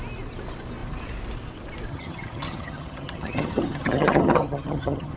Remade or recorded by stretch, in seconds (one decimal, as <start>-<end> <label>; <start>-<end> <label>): 0.0-1.9 recorded; 1.9-5.2 remade